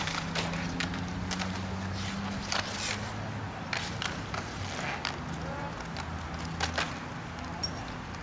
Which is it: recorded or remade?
recorded